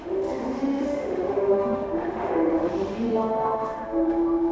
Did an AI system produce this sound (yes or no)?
yes